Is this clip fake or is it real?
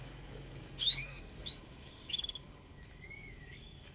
fake